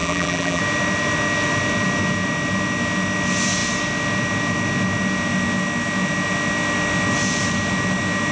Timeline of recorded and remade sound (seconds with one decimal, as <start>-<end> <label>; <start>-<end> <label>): 0.0-0.6 remade; 0.6-8.3 recorded